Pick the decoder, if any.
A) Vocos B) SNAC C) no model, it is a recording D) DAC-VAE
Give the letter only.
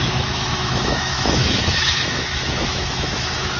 D